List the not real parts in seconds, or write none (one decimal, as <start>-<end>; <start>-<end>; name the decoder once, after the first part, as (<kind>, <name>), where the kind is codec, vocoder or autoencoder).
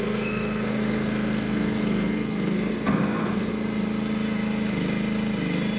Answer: 0.0-3.5 (codec, SNAC)